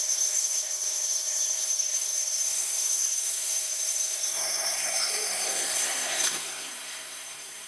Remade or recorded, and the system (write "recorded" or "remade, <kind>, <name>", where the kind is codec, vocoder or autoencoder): remade, codec, SNAC